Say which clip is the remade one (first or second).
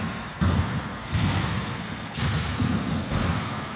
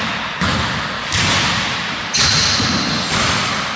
first